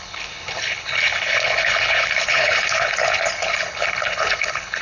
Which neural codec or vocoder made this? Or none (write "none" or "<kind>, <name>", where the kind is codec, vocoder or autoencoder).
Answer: codec, HILCodec